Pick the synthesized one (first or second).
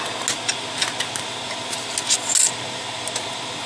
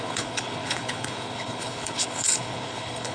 second